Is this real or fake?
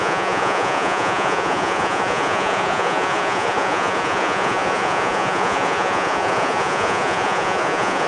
fake